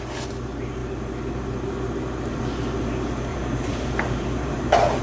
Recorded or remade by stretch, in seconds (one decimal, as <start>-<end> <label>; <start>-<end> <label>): 0.0-3.3 recorded; 3.3-5.0 remade